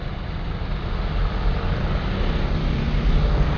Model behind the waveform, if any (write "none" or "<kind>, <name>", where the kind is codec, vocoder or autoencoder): none